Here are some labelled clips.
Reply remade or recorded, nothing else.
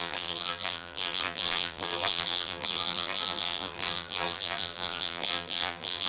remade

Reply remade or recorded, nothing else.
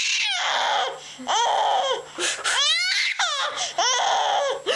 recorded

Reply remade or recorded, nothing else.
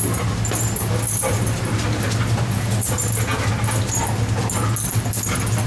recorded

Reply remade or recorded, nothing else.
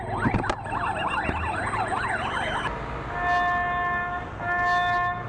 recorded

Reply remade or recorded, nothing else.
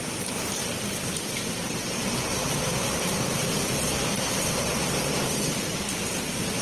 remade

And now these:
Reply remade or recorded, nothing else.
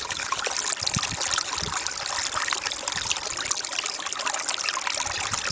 recorded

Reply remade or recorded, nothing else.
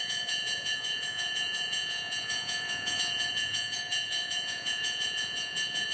remade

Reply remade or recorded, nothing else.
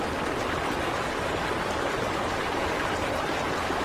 recorded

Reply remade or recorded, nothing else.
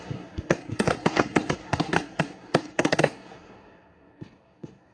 remade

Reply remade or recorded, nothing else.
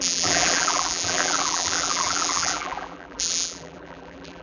remade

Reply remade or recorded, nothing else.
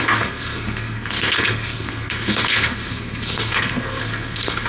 remade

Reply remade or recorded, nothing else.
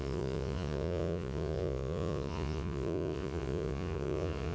remade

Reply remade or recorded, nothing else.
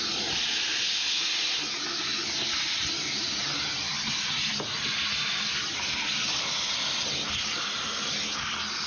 recorded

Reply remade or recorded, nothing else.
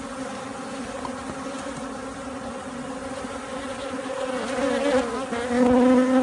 recorded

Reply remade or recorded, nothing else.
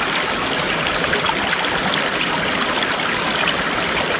recorded